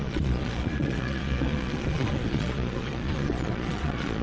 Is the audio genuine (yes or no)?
no